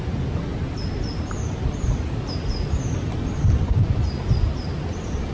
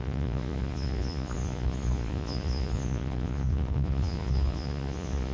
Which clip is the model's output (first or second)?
second